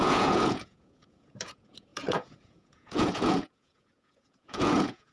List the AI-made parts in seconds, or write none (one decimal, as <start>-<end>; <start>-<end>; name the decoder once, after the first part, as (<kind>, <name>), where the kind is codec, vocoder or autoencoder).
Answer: 0.0-5.1 (vocoder, Vocos)